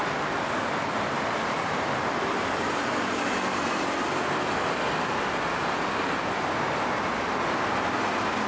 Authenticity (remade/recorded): recorded